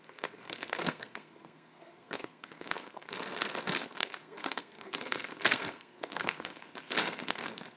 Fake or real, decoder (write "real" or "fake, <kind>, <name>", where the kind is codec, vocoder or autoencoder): fake, codec, SNAC